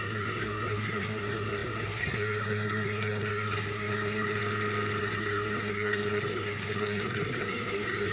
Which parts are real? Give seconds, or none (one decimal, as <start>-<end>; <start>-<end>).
4.4-5.0